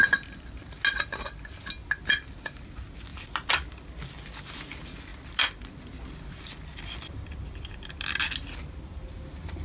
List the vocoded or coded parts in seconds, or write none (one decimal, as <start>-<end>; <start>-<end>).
none

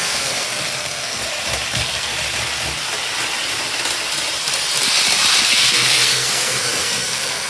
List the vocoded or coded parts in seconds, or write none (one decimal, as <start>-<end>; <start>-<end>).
0.0-1.2; 1.7-2.1; 5.4-7.5

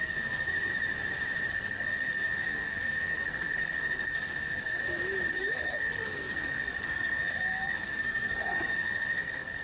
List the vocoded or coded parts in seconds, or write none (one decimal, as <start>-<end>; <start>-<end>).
0.0-0.7; 1.5-4.8; 5.3-9.6

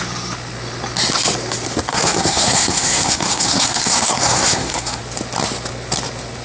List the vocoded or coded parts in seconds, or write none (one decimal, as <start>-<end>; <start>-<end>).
1.9-5.0

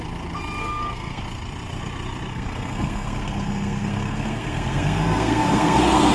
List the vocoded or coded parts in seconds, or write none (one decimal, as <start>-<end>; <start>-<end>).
0.6-1.2; 2.3-6.1

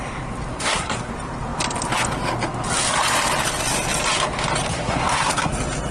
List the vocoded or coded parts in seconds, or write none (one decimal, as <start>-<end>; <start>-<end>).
0.5-1.1; 4.7-5.5